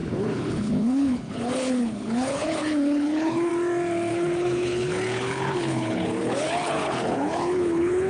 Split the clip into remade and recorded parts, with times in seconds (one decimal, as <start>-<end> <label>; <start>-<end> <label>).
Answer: 0.0-3.5 remade; 3.5-4.1 recorded; 4.1-8.1 remade